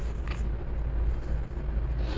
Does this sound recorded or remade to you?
recorded